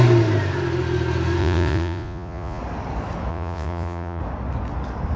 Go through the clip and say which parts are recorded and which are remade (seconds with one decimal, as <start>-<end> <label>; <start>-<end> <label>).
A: 0.0-1.4 recorded; 1.4-2.6 remade; 2.6-3.3 recorded; 3.3-4.2 remade; 4.2-5.2 recorded